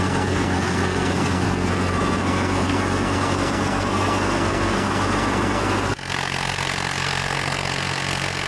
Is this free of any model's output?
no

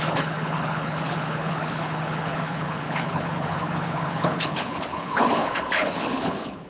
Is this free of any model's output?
no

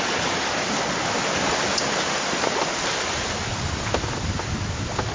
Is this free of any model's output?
yes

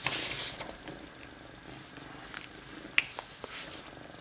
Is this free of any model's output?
yes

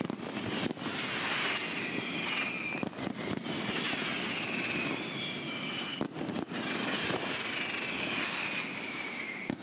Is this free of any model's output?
yes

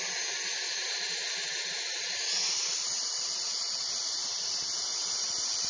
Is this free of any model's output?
yes